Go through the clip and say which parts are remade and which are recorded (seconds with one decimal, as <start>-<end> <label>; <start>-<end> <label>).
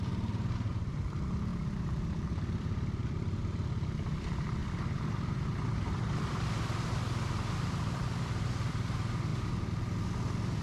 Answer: 0.0-9.3 remade; 9.3-10.6 recorded